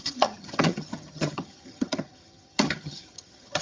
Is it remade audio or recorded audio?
remade